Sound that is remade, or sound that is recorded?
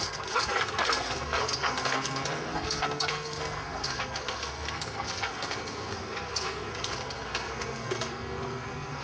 remade